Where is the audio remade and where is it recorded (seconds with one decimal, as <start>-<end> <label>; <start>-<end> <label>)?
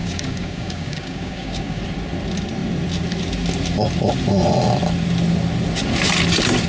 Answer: 0.0-1.8 remade; 1.8-6.7 recorded